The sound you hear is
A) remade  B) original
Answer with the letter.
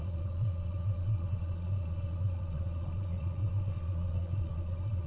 A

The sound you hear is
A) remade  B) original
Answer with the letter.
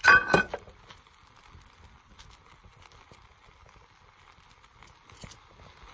B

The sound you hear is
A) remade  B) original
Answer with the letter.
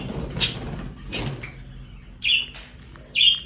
B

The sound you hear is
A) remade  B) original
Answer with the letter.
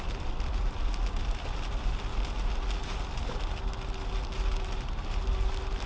B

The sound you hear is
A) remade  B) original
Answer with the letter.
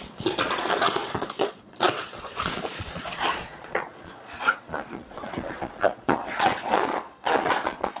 A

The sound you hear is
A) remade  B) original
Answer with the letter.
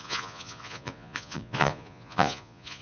A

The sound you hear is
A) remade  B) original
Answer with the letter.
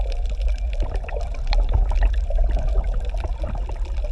B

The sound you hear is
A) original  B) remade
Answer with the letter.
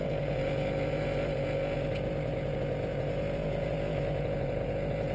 B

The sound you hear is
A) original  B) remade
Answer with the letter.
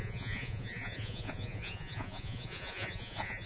B